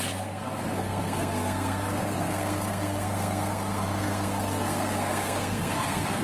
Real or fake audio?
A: fake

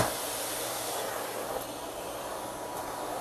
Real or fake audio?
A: real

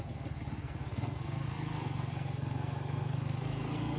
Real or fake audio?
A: fake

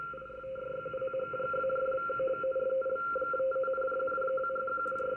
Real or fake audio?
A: real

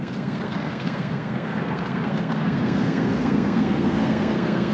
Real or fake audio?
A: fake